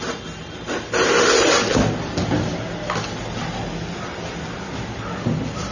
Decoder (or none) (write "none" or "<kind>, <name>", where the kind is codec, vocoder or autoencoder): none